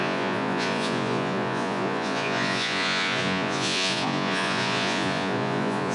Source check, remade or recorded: remade